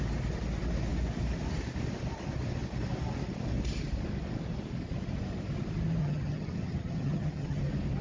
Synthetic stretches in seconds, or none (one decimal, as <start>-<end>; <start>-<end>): 6.0-7.6